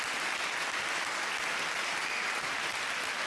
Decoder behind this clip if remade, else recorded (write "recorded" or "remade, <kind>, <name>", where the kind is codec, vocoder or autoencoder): recorded